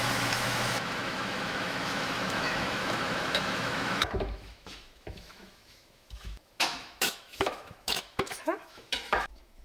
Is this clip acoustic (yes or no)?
no